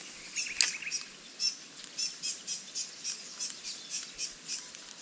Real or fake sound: real